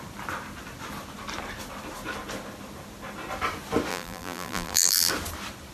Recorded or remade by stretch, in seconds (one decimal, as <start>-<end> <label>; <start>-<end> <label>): 0.0-3.9 recorded; 3.9-5.1 remade; 5.1-5.7 recorded